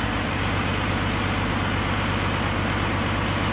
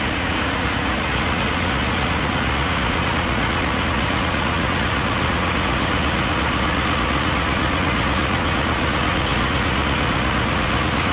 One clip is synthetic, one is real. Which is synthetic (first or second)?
second